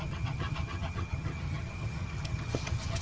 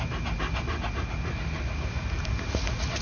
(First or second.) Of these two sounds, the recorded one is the second